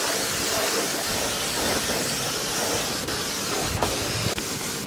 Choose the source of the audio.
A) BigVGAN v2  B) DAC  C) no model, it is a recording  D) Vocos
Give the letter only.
C